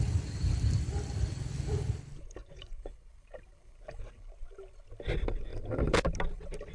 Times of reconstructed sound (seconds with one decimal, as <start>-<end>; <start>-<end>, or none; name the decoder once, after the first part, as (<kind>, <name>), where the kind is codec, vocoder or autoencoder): 2.4-3.1 (vocoder, Vocos)